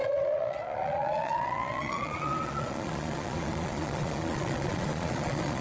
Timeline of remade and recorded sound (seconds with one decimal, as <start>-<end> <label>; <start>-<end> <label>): 0.0-5.6 remade